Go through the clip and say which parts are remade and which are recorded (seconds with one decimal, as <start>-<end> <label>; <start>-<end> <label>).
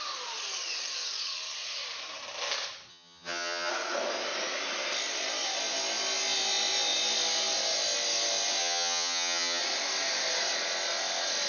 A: 0.0-2.9 recorded; 2.9-3.7 remade; 3.7-8.6 recorded; 8.6-9.6 remade; 9.6-11.5 recorded